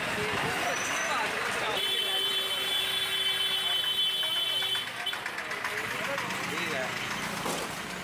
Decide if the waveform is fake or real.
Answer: real